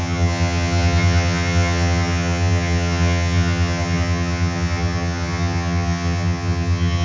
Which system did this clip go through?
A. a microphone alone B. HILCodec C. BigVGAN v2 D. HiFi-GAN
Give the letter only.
D